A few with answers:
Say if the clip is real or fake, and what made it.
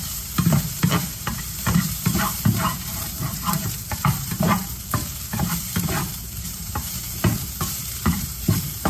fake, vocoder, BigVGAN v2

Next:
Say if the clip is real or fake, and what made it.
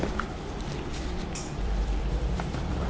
fake, vocoder, BigVGAN v2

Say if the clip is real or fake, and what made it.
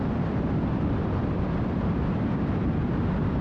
fake, vocoder, BigVGAN v2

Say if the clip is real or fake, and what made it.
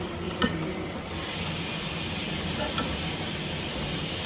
real